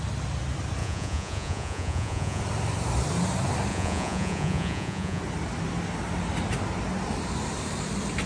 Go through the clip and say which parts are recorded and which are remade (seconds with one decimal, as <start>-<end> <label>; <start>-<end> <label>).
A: 0.0-0.8 recorded; 0.8-2.4 remade; 2.4-3.7 recorded; 3.7-5.2 remade; 5.2-8.3 recorded